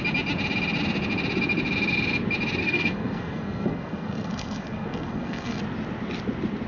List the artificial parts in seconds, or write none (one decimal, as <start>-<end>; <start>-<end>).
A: 2.6-5.6